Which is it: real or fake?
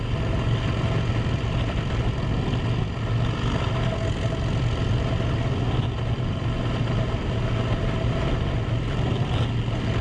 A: real